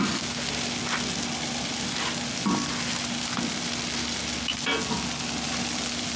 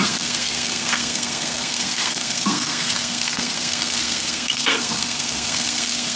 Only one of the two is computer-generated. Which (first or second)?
second